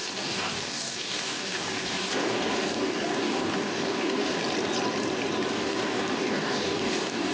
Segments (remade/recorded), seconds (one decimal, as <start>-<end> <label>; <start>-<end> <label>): 0.0-4.4 remade; 4.4-5.5 recorded; 5.5-7.3 remade